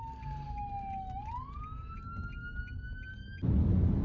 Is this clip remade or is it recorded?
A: recorded